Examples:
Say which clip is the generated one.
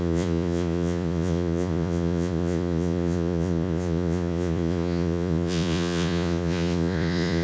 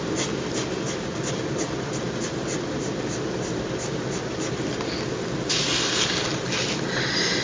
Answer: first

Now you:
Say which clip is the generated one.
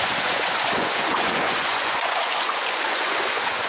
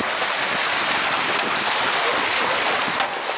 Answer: first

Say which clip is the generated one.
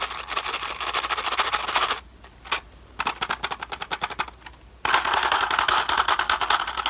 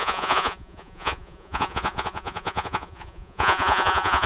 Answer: second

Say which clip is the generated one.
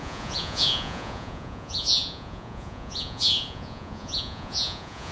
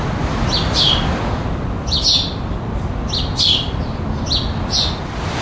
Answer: first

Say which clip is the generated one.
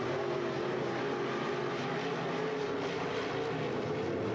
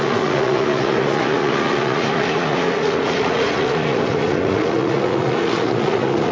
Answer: second